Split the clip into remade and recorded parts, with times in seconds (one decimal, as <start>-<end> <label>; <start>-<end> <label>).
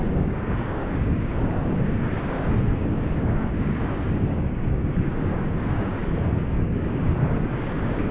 0.0-8.1 remade